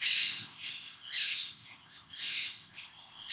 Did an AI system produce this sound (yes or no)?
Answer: yes